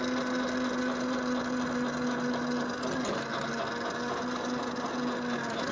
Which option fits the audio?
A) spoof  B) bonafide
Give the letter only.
B